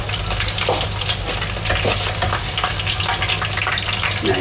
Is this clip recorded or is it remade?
recorded